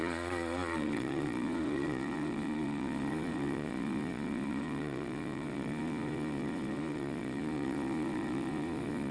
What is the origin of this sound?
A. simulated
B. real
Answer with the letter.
A